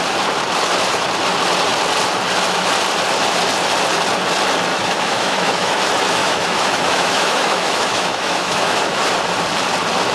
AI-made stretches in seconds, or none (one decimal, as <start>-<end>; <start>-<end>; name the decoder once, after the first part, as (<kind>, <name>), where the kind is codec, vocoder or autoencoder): 4.7-5.8 (autoencoder, DAC-VAE); 6.2-9.1